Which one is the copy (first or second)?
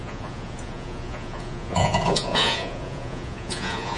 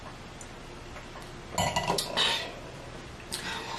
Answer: first